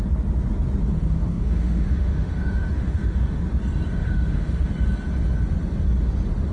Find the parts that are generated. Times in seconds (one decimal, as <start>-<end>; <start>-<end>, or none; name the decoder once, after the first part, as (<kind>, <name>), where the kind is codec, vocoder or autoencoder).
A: 0.8-3.4 (autoencoder, DAC-VAE); 4.0-4.7